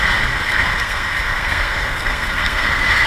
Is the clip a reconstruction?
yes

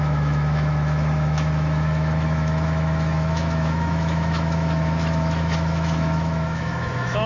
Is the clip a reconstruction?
yes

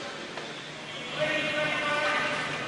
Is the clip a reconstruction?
no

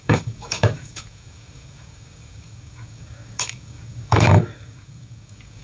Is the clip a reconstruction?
yes